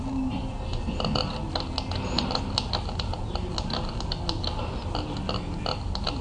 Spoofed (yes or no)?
no